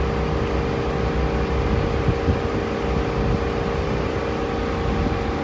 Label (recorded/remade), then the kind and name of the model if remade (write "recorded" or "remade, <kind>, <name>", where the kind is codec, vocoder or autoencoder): recorded